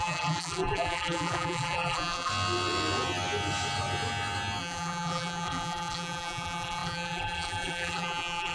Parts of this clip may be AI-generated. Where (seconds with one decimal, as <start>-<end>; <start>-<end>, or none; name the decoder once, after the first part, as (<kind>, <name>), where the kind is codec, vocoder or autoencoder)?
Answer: 0.0-2.3 (vocoder, BigVGAN v2); 4.6-8.5